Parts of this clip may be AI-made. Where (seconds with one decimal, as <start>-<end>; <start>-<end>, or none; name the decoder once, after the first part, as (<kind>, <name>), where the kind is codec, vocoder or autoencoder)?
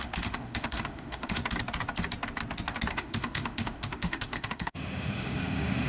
0.0-1.4 (autoencoder, DAC-VAE); 2.9-5.9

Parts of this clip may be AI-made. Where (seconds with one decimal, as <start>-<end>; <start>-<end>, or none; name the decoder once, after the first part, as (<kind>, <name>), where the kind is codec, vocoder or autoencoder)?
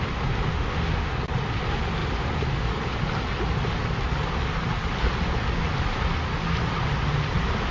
0.5-1.1 (autoencoder, DAC-VAE)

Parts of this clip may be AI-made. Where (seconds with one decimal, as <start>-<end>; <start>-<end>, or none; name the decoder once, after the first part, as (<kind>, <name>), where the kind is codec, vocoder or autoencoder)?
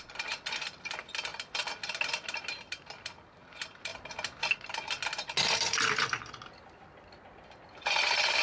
none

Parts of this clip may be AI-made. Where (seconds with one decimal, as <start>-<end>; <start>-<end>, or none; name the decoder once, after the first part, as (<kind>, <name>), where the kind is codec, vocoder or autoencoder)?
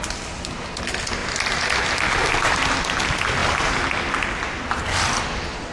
none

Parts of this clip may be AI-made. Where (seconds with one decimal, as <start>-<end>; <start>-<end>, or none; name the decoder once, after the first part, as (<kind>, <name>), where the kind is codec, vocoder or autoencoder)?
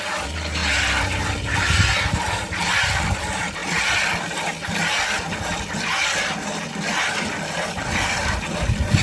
none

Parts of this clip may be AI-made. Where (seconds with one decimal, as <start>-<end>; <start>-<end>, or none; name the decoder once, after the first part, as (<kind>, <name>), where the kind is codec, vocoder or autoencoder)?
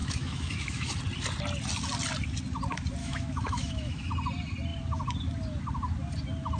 0.0-1.0 (autoencoder, DAC-VAE); 3.0-4.1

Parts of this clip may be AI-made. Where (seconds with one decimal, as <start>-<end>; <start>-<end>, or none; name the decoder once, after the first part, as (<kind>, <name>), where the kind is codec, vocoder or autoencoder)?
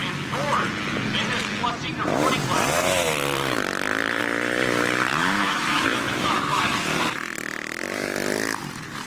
5.1-6.6 (autoencoder, DAC-VAE)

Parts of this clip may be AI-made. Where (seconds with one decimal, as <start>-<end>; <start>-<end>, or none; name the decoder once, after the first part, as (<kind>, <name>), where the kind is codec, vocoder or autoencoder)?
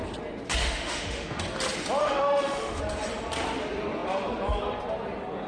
0.6-1.4 (autoencoder, DAC-VAE); 2.0-2.8